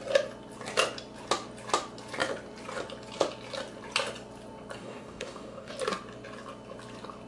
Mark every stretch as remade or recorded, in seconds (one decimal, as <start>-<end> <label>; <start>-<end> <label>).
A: 0.0-4.8 recorded; 4.8-5.7 remade; 5.7-7.3 recorded